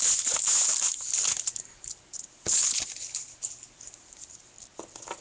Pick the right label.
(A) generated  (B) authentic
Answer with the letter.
B